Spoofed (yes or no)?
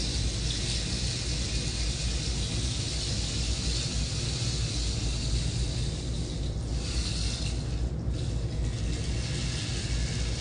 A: no